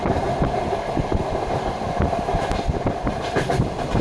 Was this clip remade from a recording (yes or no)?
no